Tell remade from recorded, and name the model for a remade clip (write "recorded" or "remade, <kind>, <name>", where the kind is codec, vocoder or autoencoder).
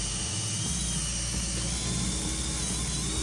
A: recorded